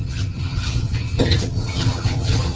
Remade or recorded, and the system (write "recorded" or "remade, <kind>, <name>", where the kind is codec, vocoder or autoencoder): remade, vocoder, HiFi-GAN